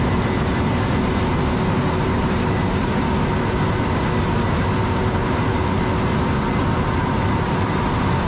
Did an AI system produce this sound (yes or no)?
no